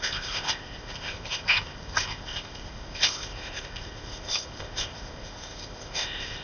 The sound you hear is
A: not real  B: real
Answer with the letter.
A